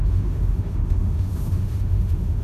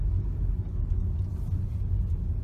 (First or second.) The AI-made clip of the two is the first